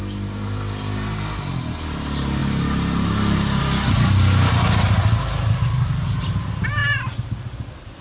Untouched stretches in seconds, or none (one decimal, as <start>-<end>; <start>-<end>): 0.0-8.0

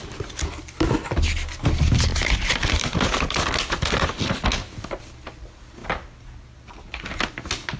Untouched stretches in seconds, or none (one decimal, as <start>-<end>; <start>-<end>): 0.0-7.8